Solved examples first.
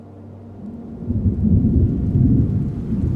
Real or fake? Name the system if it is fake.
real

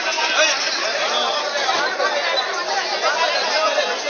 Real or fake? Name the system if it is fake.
real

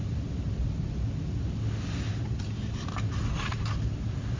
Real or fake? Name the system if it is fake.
real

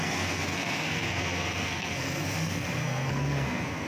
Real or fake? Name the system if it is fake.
fake, codec, SNAC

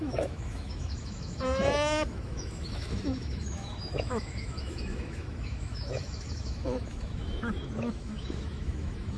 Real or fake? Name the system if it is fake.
fake, autoencoder, DAC-VAE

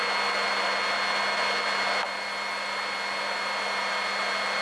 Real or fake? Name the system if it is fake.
real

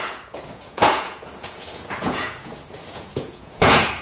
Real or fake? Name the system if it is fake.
fake, vocoder, Vocos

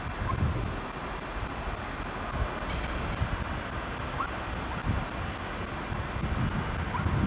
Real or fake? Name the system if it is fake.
real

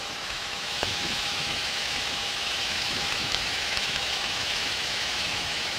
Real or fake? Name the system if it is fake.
fake, autoencoder, DAC-VAE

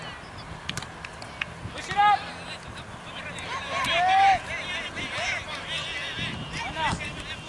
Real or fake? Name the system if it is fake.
real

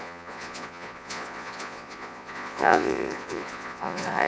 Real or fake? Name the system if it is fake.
fake, vocoder, Vocos